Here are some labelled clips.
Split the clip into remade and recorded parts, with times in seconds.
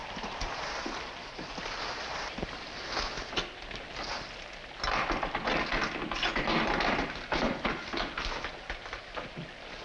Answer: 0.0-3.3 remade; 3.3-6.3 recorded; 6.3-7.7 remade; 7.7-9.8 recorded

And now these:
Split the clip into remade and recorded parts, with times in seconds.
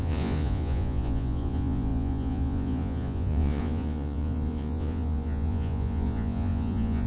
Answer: 0.0-7.1 remade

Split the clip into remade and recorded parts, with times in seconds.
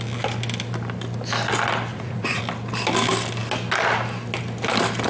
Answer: 0.0-1.9 recorded; 1.9-2.4 remade; 2.4-5.1 recorded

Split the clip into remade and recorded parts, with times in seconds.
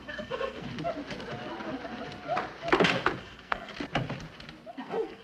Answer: 0.0-0.7 remade; 0.7-3.2 recorded; 3.2-3.7 remade; 3.7-4.7 recorded; 4.7-5.2 remade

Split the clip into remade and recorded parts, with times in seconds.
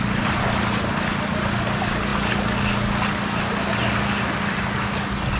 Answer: 0.0-5.4 recorded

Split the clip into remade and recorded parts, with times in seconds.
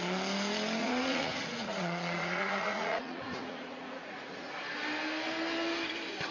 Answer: 0.0-0.8 recorded; 0.8-4.6 remade; 4.6-6.3 recorded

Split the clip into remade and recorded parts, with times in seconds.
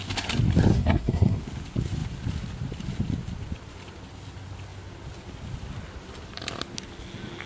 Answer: 0.0-0.7 recorded; 0.7-1.4 remade; 1.4-7.5 recorded